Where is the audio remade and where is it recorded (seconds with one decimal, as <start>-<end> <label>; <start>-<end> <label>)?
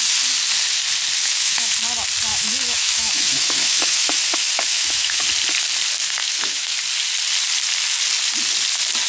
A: 0.0-1.2 recorded; 1.2-1.7 remade; 1.7-2.3 recorded; 2.3-4.2 remade; 4.2-4.7 recorded; 4.7-5.2 remade; 5.2-6.2 recorded; 6.2-6.8 remade; 6.8-9.1 recorded